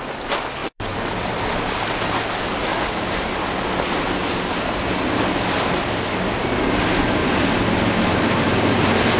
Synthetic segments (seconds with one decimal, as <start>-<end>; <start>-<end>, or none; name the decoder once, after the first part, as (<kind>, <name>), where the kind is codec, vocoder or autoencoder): 0.6-1.8 (vocoder, BigVGAN v2)